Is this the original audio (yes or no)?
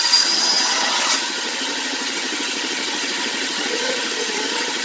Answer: no